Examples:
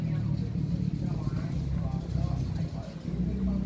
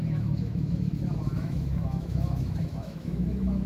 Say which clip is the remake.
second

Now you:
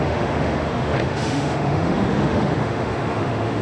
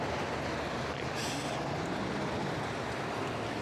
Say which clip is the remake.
first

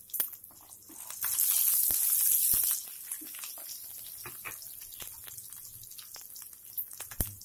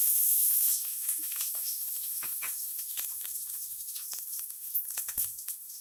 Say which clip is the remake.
second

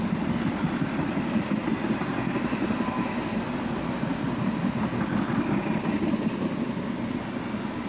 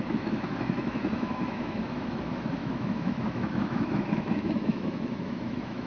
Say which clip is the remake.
second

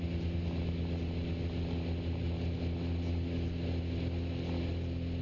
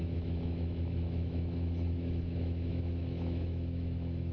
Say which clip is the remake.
second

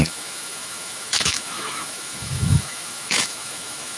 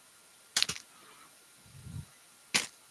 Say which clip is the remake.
first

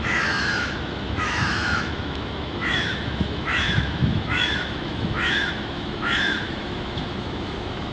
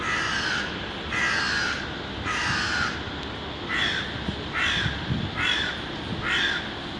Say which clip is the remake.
first